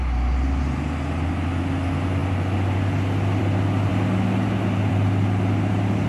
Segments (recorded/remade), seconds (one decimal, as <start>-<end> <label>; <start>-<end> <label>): 0.0-6.1 recorded